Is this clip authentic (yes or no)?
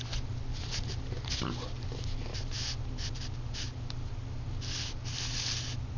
yes